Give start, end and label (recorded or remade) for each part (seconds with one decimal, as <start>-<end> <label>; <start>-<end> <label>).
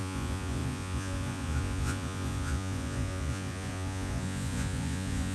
0.0-5.3 remade